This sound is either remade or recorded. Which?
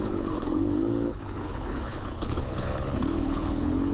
remade